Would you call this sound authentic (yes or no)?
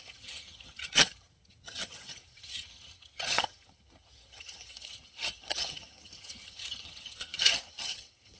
no